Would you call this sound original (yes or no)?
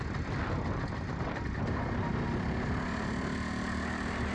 yes